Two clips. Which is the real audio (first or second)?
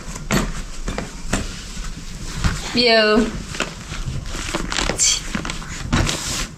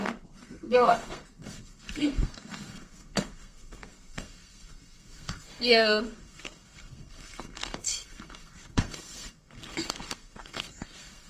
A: first